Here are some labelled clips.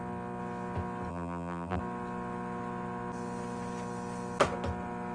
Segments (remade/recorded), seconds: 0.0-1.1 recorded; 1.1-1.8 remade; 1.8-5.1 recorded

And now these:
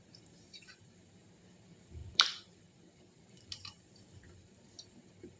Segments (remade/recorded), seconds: 0.0-5.4 remade

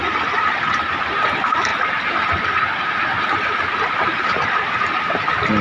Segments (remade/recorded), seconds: 0.0-1.7 remade; 1.7-3.2 recorded; 3.2-5.6 remade

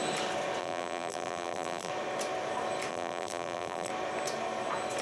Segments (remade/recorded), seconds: 0.0-0.6 recorded; 0.6-1.9 remade; 1.9-2.9 recorded; 2.9-3.9 remade; 3.9-5.0 recorded

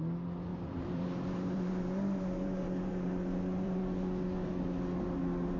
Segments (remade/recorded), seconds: 0.0-0.5 recorded; 0.5-3.8 remade; 3.8-5.6 recorded